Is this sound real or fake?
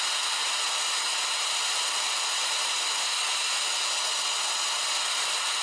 real